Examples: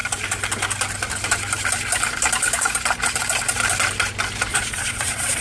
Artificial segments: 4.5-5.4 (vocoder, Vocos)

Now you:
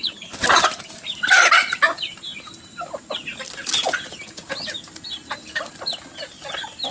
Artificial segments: none

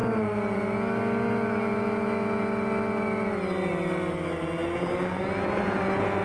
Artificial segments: none